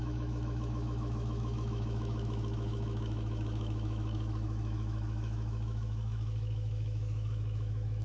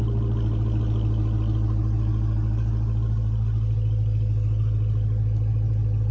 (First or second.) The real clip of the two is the second